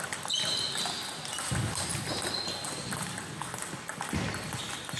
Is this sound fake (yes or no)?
no